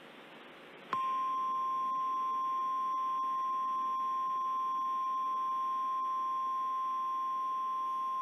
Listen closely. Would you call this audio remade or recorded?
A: recorded